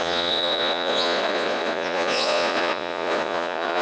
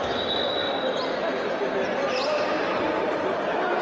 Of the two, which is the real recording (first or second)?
second